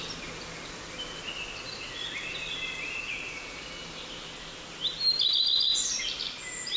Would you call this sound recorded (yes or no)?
yes